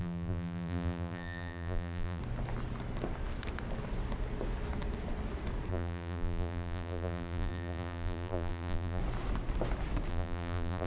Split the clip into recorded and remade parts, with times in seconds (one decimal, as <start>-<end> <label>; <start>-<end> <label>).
0.0-2.2 remade; 2.2-5.7 recorded; 5.7-9.0 remade; 9.0-10.1 recorded; 10.1-10.9 remade